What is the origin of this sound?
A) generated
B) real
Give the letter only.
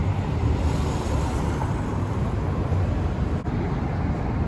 B